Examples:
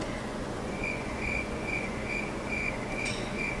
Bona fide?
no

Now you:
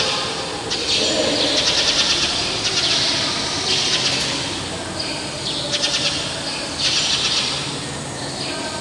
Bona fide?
yes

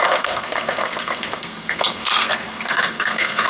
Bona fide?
no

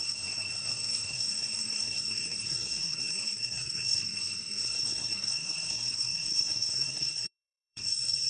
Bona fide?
no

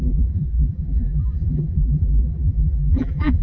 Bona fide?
no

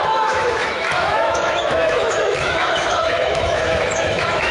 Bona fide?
no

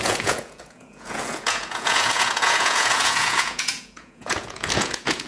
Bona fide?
no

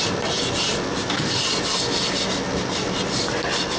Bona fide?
yes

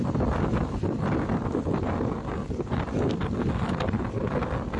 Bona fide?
yes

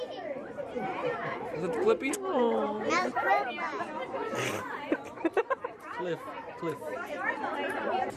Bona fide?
no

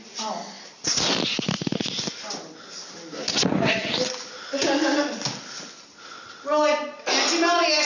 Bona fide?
yes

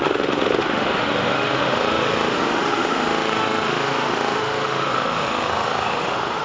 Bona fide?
no